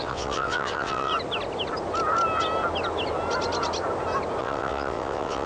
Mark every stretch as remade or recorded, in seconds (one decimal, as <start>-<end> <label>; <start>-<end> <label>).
0.0-1.1 remade; 1.1-4.4 recorded; 4.4-5.5 remade